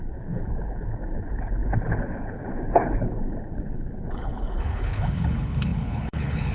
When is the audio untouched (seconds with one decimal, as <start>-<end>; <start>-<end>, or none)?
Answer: none